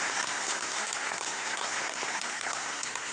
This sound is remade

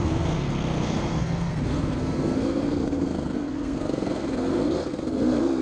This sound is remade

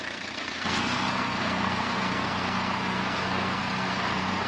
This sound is remade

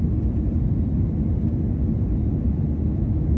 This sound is recorded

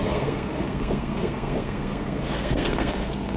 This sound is remade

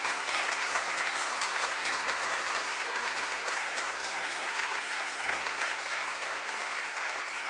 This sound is remade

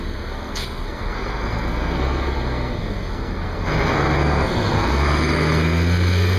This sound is remade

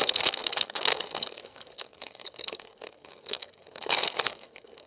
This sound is remade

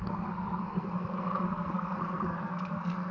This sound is remade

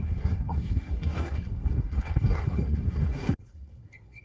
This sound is remade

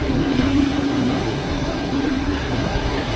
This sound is remade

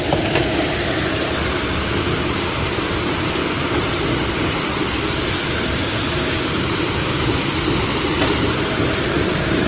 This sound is recorded